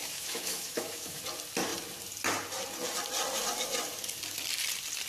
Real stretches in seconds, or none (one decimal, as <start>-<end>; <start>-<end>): 1.2-5.1